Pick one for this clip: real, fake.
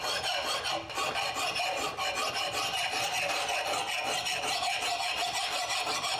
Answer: real